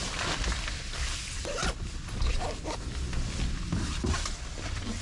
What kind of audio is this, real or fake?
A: fake